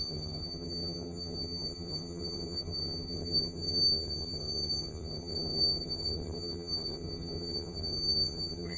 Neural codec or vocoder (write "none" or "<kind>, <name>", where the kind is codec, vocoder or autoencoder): vocoder, HiFi-GAN